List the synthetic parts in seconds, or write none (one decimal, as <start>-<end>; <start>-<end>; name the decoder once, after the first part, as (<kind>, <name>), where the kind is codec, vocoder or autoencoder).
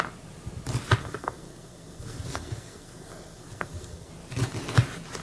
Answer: 1.0-4.1 (codec, SNAC)